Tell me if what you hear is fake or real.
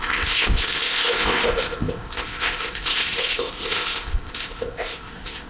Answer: fake